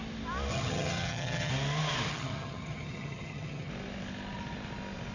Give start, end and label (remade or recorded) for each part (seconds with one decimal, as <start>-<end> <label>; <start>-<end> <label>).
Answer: 0.0-0.5 recorded; 0.5-1.5 remade; 1.5-2.1 recorded; 2.1-3.7 remade; 3.7-5.1 recorded